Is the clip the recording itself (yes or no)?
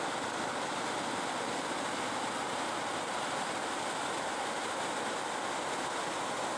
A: yes